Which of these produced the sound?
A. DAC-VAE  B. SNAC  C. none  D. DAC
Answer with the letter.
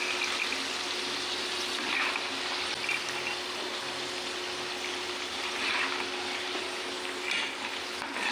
C